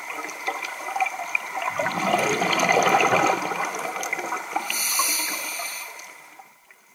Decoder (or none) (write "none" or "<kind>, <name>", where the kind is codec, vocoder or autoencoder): none